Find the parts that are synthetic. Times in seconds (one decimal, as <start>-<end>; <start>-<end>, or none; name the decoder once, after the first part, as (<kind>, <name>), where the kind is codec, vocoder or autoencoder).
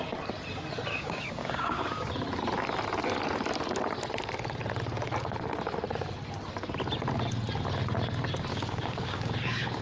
0.9-2.1 (codec, DAC); 8.5-9.8